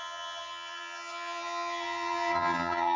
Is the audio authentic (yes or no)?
no